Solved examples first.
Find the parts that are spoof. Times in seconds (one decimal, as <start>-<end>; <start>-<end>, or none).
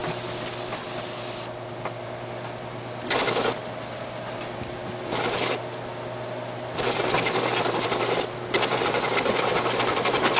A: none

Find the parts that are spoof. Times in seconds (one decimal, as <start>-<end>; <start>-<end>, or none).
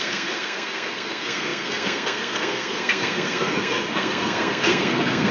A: 0.0-5.3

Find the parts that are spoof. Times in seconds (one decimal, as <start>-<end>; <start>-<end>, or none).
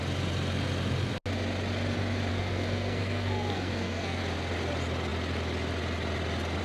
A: 2.3-4.2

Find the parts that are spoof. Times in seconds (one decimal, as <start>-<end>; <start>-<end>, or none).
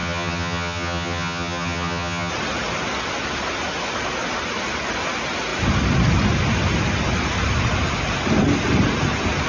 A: 0.0-2.3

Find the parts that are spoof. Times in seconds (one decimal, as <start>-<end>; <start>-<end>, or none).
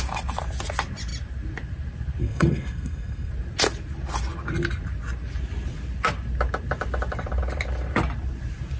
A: 2.2-3.3